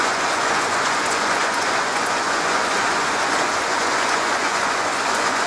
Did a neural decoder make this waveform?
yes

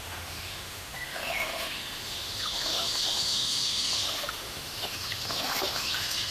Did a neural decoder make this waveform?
yes